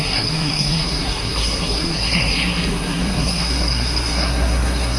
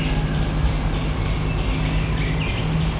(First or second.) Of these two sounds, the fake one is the first